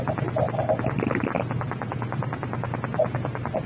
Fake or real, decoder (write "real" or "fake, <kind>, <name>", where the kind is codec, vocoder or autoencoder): real